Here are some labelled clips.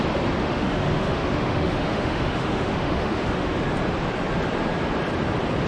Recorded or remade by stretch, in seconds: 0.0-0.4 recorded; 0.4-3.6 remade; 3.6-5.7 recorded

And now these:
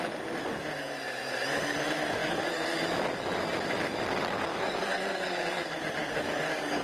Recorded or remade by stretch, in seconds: 0.0-2.2 recorded; 2.2-2.8 remade; 2.8-4.5 recorded; 4.5-5.6 remade; 5.6-6.0 recorded; 6.0-6.8 remade